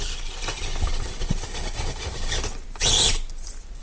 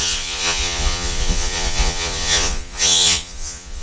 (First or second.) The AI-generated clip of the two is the second